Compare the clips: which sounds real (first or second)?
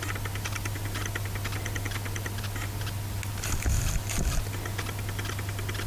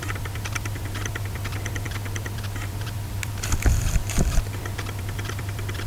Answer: first